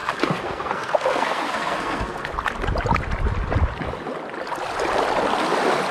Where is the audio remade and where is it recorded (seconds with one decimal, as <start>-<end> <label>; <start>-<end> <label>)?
0.0-2.3 remade; 2.3-5.9 recorded